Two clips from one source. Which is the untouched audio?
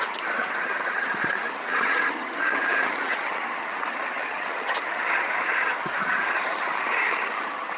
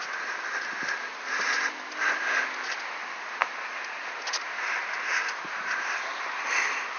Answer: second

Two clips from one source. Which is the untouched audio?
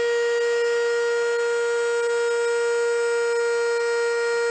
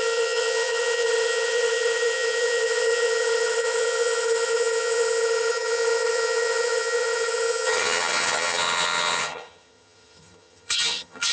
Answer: first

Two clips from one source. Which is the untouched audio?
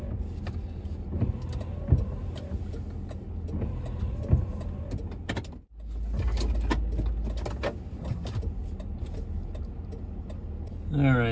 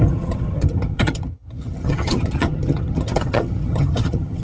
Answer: first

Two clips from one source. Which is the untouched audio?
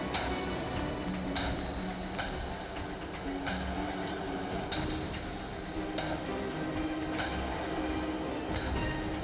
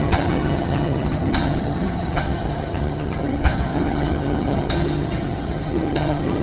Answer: first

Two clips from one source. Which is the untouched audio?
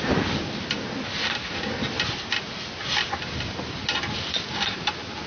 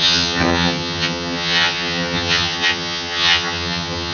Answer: first